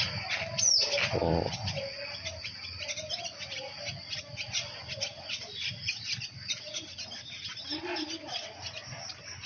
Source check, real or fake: real